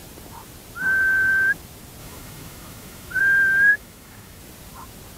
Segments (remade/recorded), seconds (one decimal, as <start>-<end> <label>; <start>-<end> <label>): 0.0-2.0 recorded; 2.0-3.2 remade; 3.2-3.7 recorded; 3.7-4.4 remade; 4.4-5.2 recorded